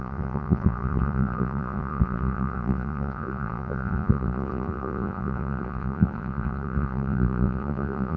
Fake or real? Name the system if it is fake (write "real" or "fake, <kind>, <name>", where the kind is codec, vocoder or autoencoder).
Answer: fake, vocoder, Vocos